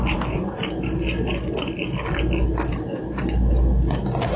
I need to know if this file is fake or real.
real